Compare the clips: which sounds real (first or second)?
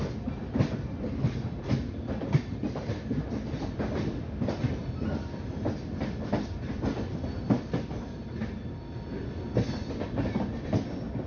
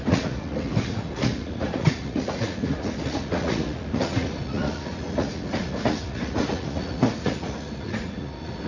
first